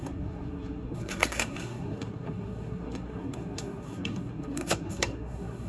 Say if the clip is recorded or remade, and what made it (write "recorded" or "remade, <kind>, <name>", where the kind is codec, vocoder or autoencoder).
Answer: remade, codec, SNAC